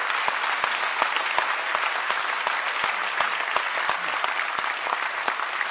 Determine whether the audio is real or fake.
real